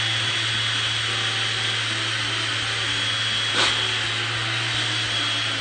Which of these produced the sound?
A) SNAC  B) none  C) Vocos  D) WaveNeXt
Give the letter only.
B